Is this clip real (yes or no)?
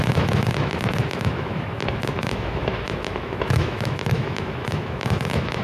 no